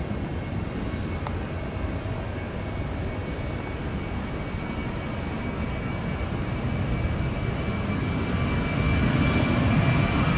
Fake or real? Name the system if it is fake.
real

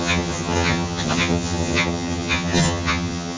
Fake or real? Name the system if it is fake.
fake, vocoder, HiFi-GAN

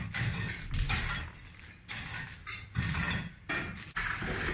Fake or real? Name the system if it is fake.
real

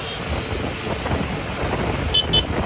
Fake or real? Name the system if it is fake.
real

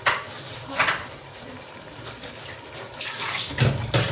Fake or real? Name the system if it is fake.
real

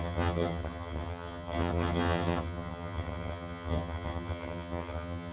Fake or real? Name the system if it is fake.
fake, vocoder, HiFi-GAN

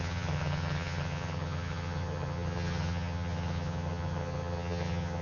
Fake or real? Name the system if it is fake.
fake, vocoder, HiFi-GAN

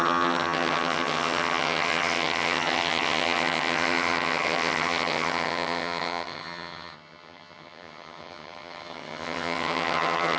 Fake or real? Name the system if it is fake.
fake, vocoder, HiFi-GAN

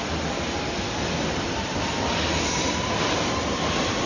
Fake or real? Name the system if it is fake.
real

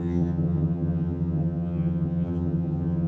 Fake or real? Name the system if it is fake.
fake, vocoder, HiFi-GAN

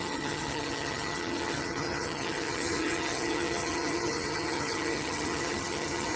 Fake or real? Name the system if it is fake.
fake, vocoder, HiFi-GAN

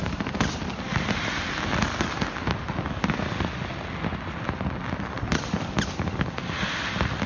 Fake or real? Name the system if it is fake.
real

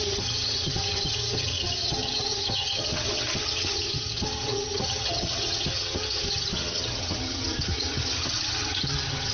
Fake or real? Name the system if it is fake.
fake, vocoder, HiFi-GAN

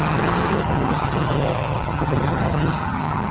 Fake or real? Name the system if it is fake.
fake, vocoder, HiFi-GAN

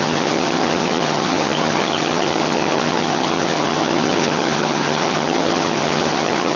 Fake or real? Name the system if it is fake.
fake, vocoder, HiFi-GAN